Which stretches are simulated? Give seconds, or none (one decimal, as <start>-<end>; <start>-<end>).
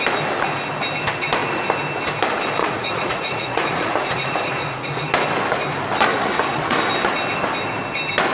2.6-5.1; 6.1-6.9